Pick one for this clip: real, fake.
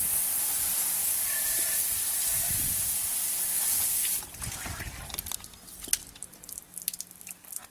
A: real